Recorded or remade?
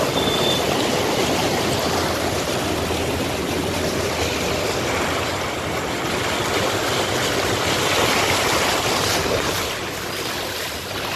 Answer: recorded